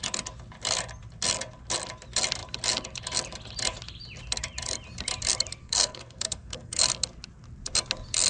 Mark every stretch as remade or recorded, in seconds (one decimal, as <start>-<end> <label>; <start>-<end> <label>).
0.0-5.6 recorded; 5.6-6.8 remade; 6.8-8.3 recorded